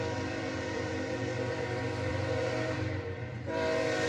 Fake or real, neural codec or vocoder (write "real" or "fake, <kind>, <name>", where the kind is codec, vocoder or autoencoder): fake, vocoder, BigVGAN v2